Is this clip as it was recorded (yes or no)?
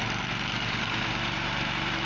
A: no